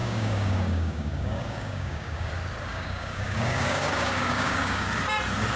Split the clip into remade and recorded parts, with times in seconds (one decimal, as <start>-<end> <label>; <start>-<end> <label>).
0.0-2.3 remade; 2.3-2.7 recorded; 2.7-4.9 remade; 4.9-5.6 recorded